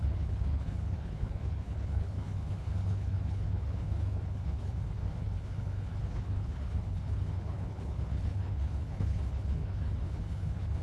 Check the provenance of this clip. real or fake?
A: fake